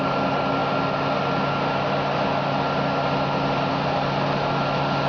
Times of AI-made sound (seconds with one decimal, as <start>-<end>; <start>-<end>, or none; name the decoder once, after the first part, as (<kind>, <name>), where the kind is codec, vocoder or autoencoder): none